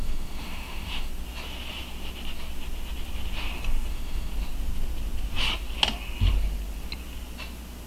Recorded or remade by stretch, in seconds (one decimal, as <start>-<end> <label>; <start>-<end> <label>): 0.0-1.1 remade; 1.1-3.9 recorded; 3.9-4.3 remade; 4.3-7.9 recorded